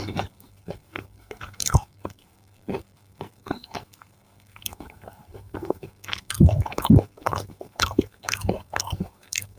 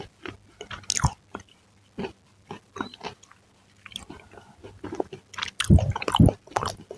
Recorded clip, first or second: second